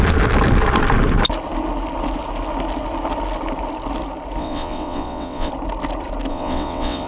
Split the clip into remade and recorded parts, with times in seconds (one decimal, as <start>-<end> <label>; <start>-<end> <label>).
0.0-4.4 recorded; 4.4-5.5 remade; 5.5-6.3 recorded; 6.3-7.1 remade